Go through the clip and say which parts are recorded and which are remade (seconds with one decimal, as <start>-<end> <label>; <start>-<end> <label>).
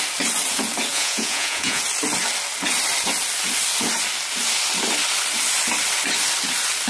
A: 0.0-0.9 recorded; 0.9-1.8 remade; 1.8-6.9 recorded